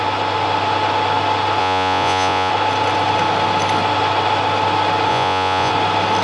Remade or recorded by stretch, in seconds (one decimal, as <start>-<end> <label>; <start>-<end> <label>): 0.0-1.6 recorded; 1.6-2.5 remade; 2.5-5.1 recorded; 5.1-5.7 remade; 5.7-6.2 recorded